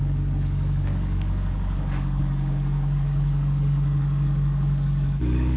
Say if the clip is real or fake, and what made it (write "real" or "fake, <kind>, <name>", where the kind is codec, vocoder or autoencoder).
fake, codec, DAC